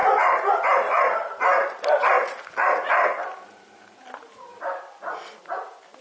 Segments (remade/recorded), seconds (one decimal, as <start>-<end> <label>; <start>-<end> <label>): 0.0-2.4 remade; 2.4-6.0 recorded